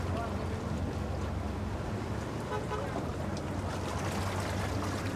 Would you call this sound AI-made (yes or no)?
no